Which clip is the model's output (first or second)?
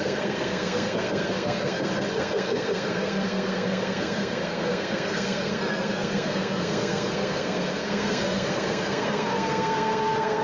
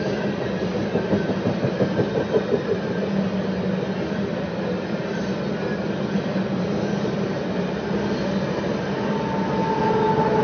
first